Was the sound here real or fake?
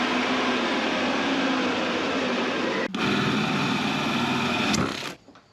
real